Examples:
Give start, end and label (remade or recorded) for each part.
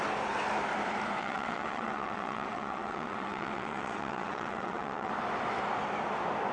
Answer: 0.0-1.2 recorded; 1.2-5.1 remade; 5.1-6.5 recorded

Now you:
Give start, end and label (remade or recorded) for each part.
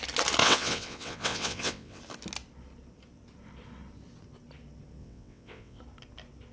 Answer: 0.0-0.4 recorded; 0.4-2.0 remade; 2.0-5.0 recorded; 5.0-5.8 remade; 5.8-6.5 recorded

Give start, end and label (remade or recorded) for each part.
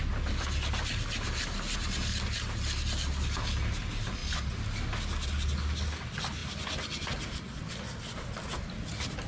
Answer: 0.0-9.3 recorded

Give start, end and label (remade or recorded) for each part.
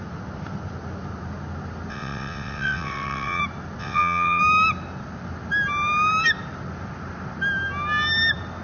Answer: 0.0-1.9 recorded; 1.9-3.4 remade; 3.4-3.8 recorded; 3.8-4.4 remade; 4.4-8.6 recorded